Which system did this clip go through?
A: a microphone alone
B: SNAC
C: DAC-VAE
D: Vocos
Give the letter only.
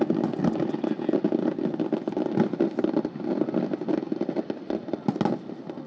A